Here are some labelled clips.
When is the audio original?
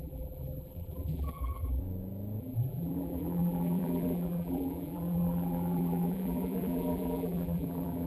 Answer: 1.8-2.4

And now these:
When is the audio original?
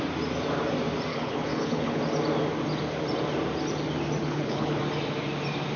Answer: 0.0-1.1; 2.0-4.2; 4.8-5.8